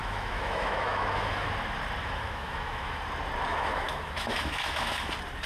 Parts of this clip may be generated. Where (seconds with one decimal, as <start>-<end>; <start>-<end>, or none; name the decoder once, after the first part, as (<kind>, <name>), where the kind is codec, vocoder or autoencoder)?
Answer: 0.0-1.5 (autoencoder, DAC-VAE); 2.0-3.0; 3.5-5.1